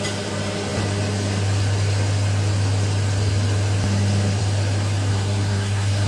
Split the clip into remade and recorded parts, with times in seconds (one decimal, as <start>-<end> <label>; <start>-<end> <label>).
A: 0.0-5.1 recorded; 5.1-6.1 remade